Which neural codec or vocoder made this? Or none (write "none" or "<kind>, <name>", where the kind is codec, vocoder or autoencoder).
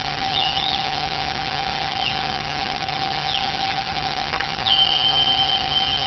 vocoder, HiFi-GAN